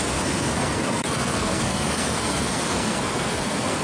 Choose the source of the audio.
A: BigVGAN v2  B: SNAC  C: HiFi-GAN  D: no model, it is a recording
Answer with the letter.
B